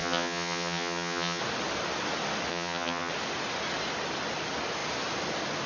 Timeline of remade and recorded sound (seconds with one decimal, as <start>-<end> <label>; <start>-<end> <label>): 0.0-1.4 remade; 1.4-2.5 recorded; 2.5-3.1 remade; 3.1-5.7 recorded